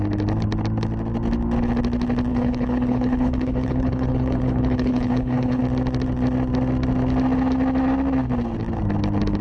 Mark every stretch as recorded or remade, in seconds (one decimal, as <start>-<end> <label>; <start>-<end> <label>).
0.0-2.3 recorded; 2.3-5.6 remade; 5.6-9.4 recorded